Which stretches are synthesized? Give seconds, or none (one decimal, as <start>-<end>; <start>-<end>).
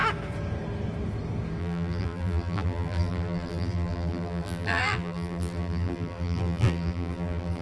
1.6-7.6